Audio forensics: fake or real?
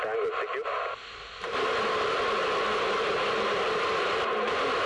real